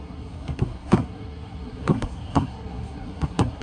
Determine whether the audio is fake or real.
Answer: fake